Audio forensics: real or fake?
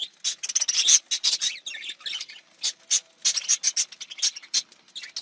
real